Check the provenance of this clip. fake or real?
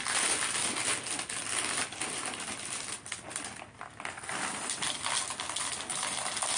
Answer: real